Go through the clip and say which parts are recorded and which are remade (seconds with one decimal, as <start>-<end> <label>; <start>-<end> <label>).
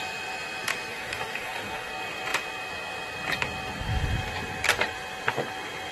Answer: 0.0-0.9 recorded; 0.9-1.9 remade; 1.9-5.9 recorded